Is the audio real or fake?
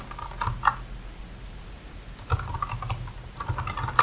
real